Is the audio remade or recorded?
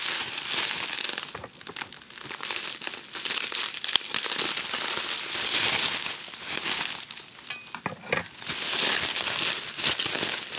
recorded